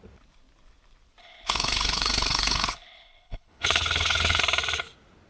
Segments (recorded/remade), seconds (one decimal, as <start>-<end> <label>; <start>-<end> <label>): 0.0-1.2 recorded; 1.2-4.4 remade; 4.4-5.3 recorded